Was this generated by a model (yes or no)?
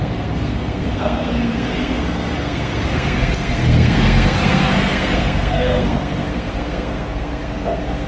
yes